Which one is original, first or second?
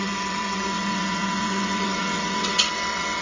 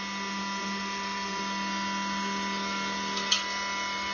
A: second